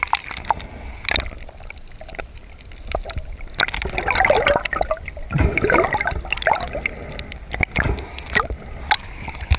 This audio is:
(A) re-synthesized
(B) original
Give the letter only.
B